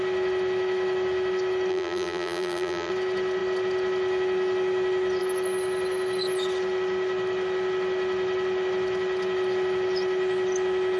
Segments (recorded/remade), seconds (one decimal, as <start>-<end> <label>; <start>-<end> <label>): 0.0-1.7 recorded; 1.7-2.9 remade; 2.9-11.0 recorded